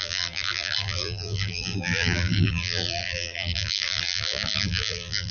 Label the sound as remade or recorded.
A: remade